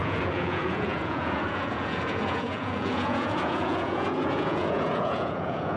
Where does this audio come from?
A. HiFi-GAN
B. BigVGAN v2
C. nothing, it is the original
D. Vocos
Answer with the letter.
D